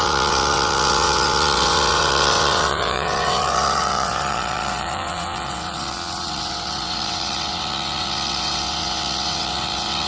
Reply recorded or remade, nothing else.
remade